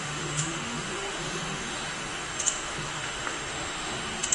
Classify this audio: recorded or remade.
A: remade